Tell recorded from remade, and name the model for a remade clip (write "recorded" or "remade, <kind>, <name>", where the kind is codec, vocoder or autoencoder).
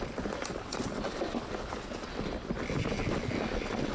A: recorded